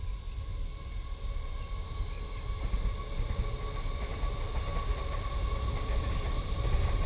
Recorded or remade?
recorded